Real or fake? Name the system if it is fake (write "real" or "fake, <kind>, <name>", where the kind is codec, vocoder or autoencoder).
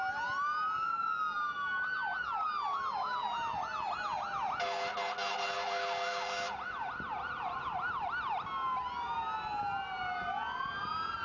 real